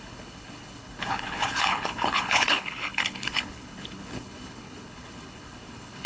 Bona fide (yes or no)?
no